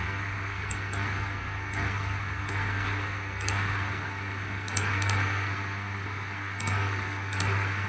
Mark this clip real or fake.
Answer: fake